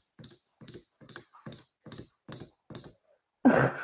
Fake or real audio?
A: real